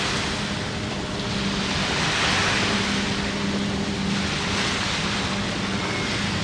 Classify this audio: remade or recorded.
recorded